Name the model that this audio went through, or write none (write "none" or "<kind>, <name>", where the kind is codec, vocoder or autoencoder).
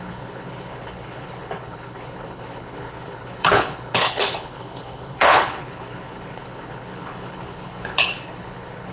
codec, HILCodec